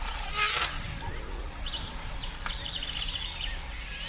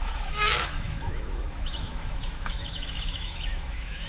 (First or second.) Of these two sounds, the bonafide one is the first